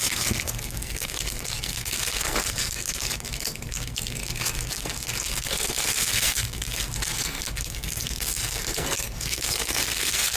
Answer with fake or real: fake